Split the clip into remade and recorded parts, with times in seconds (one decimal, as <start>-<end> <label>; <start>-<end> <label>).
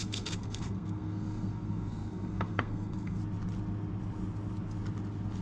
0.0-3.2 remade; 3.2-5.4 recorded